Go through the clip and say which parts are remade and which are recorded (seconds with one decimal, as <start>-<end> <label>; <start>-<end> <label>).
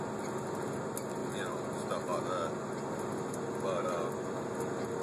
0.0-5.0 recorded